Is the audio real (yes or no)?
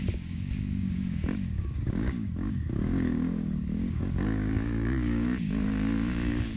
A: no